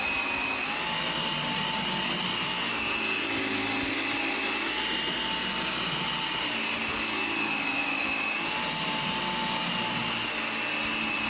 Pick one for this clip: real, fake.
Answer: real